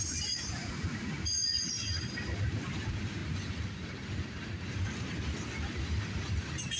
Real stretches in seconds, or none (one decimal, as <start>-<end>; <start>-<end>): 0.6-1.6; 3.2-6.8